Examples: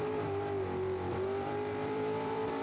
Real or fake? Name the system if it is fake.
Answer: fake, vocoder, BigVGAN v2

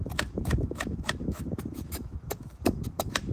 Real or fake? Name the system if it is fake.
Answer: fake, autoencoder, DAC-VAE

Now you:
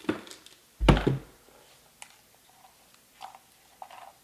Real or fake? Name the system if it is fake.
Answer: real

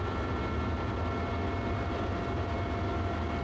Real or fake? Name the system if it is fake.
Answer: real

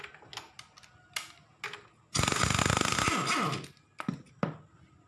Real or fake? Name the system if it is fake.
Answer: real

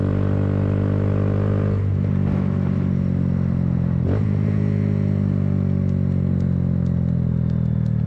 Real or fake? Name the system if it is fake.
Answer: real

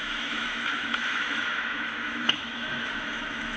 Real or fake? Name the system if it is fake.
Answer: fake, autoencoder, DAC-VAE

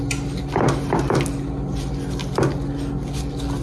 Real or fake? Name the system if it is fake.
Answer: real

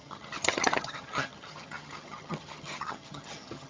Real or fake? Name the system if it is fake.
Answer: fake, vocoder, HiFi-GAN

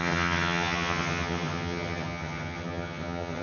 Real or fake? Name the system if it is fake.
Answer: fake, vocoder, HiFi-GAN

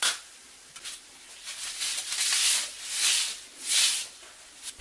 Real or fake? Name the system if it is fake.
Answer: real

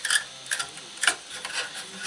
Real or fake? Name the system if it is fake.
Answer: real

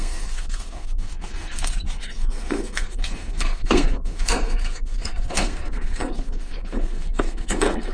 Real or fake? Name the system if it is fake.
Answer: fake, codec, SNAC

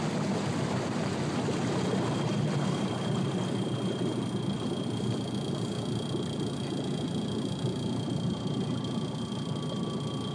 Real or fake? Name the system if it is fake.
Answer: real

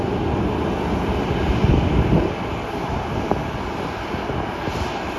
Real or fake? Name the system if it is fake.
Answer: real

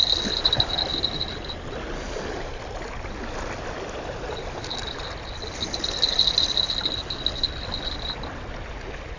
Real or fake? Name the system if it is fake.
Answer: real